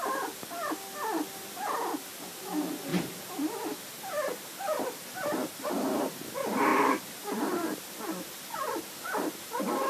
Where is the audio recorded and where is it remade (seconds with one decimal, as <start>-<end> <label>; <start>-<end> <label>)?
0.0-2.9 recorded; 2.9-5.7 remade; 5.7-6.7 recorded; 6.7-7.6 remade; 7.6-9.9 recorded